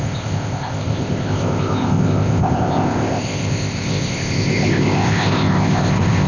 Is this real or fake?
fake